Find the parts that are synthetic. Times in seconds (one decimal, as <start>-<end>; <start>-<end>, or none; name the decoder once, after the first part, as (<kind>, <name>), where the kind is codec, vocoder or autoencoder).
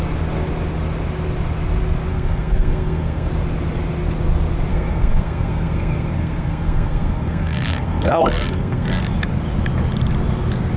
2.1-3.3 (codec, SNAC); 4.7-9.0